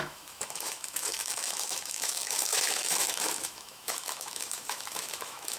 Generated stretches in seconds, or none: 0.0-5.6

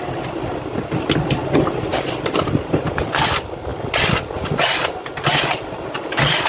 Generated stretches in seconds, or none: 0.0-3.7; 5.4-6.5

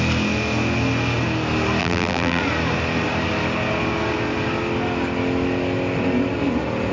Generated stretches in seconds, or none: 1.8-2.4

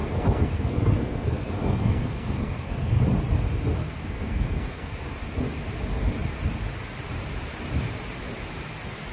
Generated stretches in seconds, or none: 0.0-3.0; 3.8-4.9

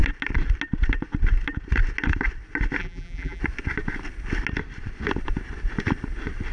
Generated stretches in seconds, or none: 2.8-3.4

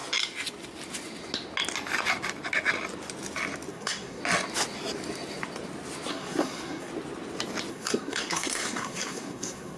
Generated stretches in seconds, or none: 3.7-4.2; 6.1-6.9; 7.7-9.8